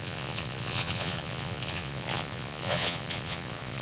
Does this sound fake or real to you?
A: fake